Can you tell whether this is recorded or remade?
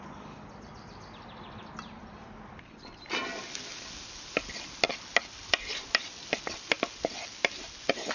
recorded